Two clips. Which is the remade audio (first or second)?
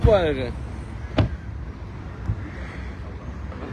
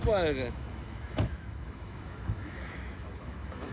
second